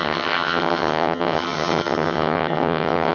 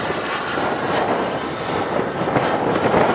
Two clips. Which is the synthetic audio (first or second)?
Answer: first